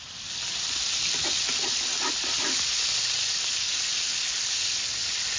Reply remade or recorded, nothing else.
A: recorded